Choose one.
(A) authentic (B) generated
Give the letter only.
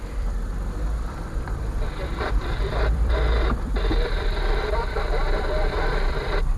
B